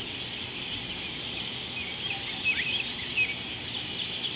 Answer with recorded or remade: recorded